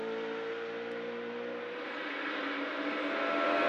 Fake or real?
real